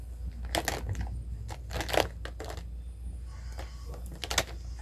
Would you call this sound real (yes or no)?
yes